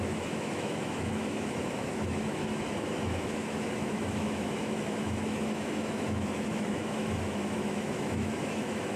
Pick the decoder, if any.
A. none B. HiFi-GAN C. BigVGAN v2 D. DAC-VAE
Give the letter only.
D